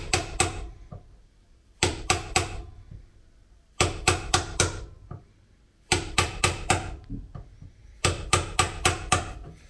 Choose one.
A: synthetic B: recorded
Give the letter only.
A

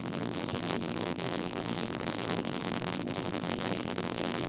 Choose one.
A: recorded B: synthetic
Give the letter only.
B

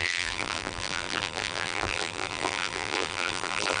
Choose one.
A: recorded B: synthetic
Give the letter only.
B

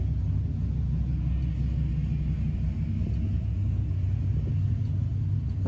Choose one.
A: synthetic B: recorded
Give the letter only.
B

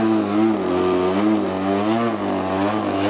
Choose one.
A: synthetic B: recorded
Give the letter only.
B